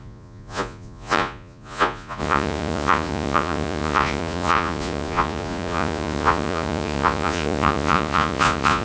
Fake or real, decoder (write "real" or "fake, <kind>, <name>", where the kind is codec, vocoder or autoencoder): fake, vocoder, Vocos